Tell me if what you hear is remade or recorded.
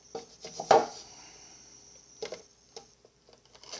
recorded